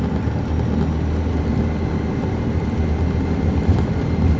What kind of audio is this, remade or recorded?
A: recorded